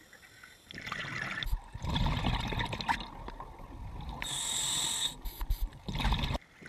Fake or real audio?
real